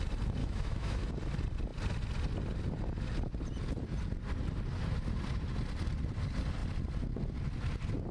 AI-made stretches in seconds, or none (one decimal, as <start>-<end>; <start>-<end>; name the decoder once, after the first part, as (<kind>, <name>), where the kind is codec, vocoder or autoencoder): 0.4-1.1 (autoencoder, DAC-VAE)